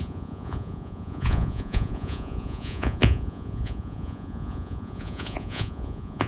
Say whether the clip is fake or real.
fake